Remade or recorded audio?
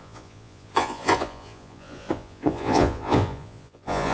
remade